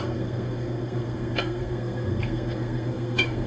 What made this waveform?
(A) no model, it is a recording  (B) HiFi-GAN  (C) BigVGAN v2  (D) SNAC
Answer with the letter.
D